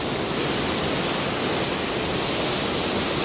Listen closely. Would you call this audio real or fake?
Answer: real